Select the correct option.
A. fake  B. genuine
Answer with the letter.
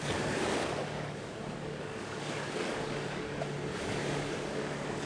A